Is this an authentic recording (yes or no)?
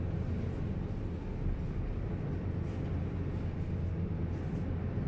yes